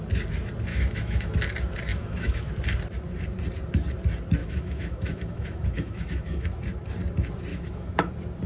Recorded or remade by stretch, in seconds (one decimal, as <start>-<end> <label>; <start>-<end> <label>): 0.0-0.7 recorded; 0.7-1.3 remade; 1.3-1.9 recorded; 1.9-2.5 remade; 2.5-4.4 recorded; 4.4-6.6 remade; 6.6-7.5 recorded; 7.5-8.1 remade; 8.1-8.5 recorded